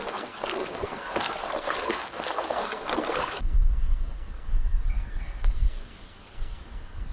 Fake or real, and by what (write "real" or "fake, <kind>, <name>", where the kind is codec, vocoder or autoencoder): fake, codec, SNAC